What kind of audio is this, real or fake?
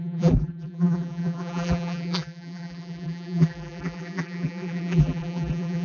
fake